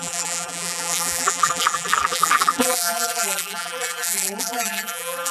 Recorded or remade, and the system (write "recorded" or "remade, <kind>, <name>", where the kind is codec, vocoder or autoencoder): remade, vocoder, BigVGAN v2